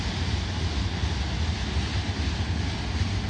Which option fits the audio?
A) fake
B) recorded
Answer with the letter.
B